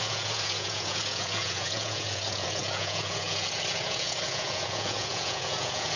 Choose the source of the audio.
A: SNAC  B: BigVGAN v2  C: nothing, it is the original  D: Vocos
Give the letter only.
D